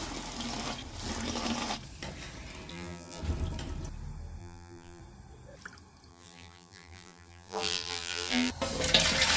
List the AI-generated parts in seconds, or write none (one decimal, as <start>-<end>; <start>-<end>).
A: 2.7-3.2; 4.4-5.0; 6.1-8.5